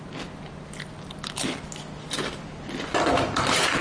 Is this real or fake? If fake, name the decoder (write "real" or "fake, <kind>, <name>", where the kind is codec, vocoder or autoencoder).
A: real